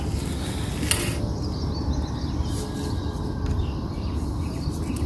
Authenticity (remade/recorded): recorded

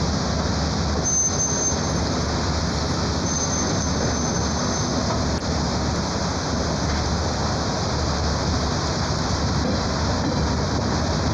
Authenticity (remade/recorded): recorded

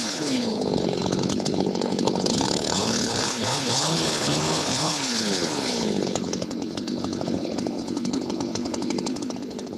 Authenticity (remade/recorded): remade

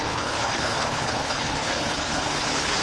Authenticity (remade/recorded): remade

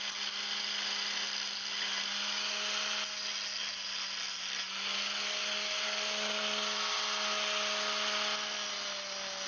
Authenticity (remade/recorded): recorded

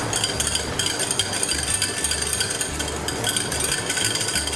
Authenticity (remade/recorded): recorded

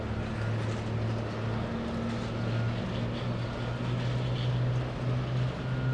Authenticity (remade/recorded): recorded